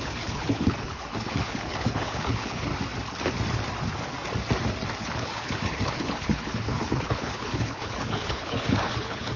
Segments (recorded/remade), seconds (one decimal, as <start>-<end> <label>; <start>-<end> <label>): 0.0-2.7 remade; 2.7-5.0 recorded; 5.0-9.4 remade